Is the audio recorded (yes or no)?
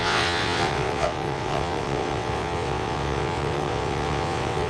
no